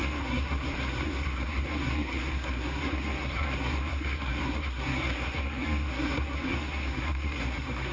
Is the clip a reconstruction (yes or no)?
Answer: yes